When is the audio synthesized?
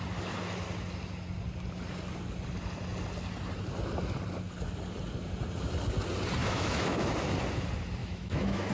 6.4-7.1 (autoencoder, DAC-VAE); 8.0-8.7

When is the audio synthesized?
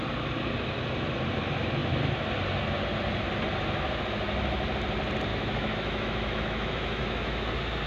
5.3-7.5 (autoencoder, DAC-VAE)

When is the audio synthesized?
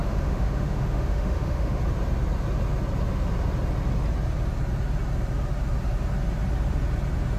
0.0-1.8 (autoencoder, DAC-VAE)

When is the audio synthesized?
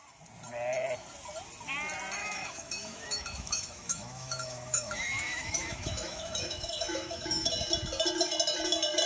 2.2-7.5 (autoencoder, DAC-VAE)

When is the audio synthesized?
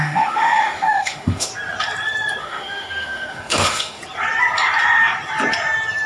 0.0-1.5 (autoencoder, DAC-VAE); 2.4-4.0